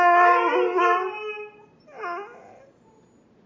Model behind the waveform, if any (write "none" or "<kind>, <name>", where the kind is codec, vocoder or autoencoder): none